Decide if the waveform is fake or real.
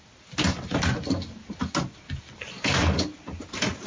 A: real